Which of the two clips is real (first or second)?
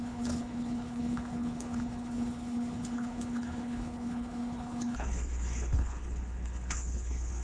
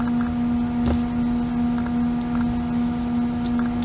second